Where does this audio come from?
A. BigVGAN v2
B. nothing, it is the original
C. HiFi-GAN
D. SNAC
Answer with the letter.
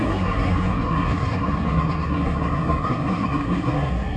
D